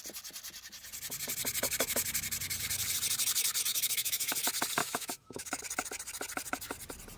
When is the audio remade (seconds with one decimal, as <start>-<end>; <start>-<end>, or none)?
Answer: 3.7-4.3; 4.8-5.6